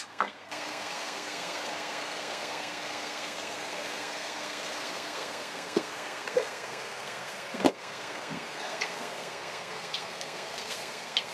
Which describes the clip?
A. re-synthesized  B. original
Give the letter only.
A